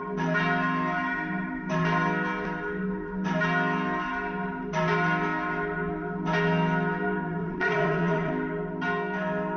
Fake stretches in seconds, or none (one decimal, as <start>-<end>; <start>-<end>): 7.4-8.3